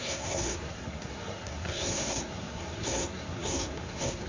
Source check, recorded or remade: remade